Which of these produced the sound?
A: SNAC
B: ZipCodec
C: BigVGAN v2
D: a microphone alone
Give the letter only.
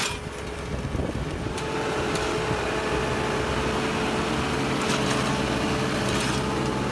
D